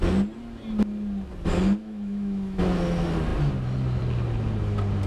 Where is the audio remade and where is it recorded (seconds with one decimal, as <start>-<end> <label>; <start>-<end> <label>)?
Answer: 0.0-1.8 recorded; 1.8-2.6 remade; 2.6-5.1 recorded

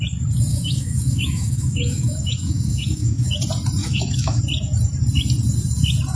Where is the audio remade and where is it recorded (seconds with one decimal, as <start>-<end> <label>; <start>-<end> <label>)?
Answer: 0.0-0.5 recorded; 0.5-3.3 remade; 3.3-3.8 recorded; 3.8-4.4 remade; 4.4-6.2 recorded